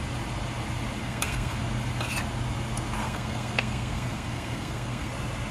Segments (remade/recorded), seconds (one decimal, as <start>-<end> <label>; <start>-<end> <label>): 0.0-1.0 recorded; 1.0-1.6 remade; 1.6-3.0 recorded; 3.0-5.1 remade; 5.1-5.5 recorded